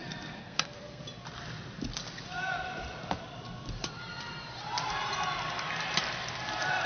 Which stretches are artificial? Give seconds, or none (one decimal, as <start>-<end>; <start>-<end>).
0.4-1.0